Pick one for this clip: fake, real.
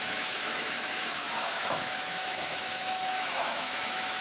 fake